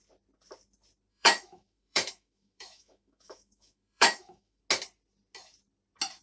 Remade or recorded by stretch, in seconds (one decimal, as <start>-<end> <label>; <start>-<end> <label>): 0.0-1.1 recorded; 1.1-4.6 remade; 4.6-6.2 recorded